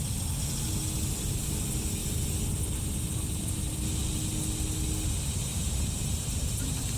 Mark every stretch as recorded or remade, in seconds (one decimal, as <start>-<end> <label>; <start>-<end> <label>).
0.0-5.5 recorded; 5.5-7.0 remade